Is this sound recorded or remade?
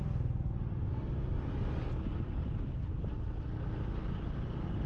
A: recorded